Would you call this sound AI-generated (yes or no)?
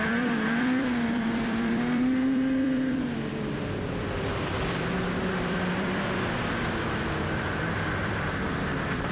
yes